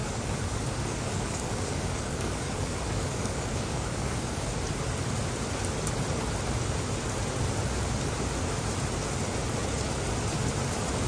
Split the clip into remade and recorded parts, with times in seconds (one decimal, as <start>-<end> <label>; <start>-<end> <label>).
0.0-4.5 remade; 4.5-11.1 recorded